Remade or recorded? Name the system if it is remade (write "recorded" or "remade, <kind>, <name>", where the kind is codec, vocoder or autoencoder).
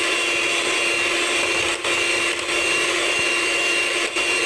recorded